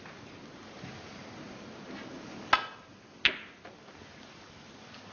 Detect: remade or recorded recorded